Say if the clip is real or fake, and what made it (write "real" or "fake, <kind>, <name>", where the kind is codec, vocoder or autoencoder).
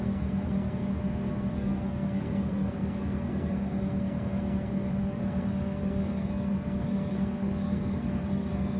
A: fake, codec, SNAC